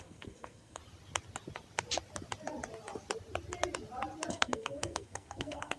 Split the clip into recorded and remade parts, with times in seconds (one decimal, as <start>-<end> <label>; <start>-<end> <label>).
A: 0.0-0.8 remade; 0.8-4.3 recorded; 4.3-5.8 remade